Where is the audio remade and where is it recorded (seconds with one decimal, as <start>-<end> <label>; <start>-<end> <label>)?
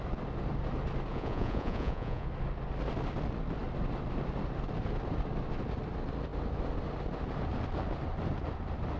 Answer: 0.0-1.1 recorded; 1.1-2.3 remade; 2.3-9.0 recorded